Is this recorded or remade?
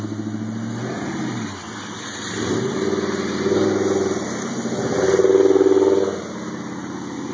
recorded